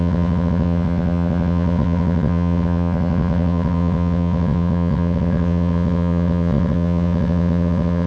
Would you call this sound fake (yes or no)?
yes